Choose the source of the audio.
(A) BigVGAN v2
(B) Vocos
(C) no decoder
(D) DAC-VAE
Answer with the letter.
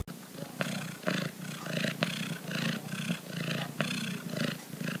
C